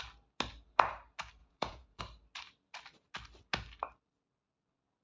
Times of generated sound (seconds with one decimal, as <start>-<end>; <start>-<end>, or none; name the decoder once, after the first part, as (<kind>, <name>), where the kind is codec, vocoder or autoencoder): 1.4-2.0 (vocoder, Vocos)